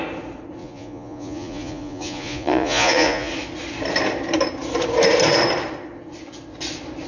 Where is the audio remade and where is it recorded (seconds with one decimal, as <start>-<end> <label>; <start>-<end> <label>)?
0.0-0.6 recorded; 0.6-3.3 remade; 3.3-7.1 recorded